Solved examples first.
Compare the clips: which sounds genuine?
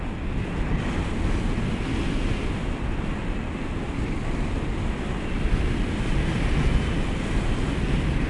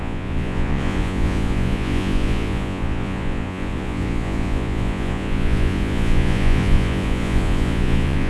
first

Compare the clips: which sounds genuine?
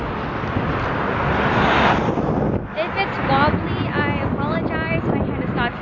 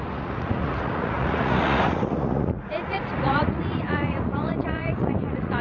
first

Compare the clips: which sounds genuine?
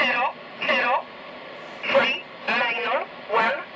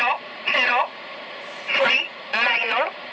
first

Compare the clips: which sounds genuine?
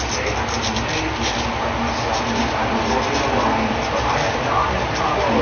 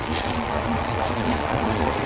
first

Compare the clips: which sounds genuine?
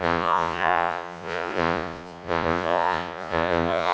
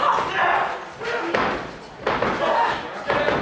second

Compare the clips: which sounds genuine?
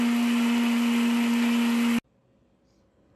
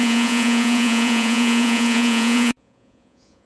first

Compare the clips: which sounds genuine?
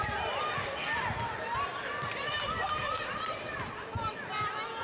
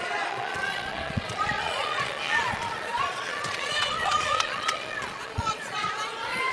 first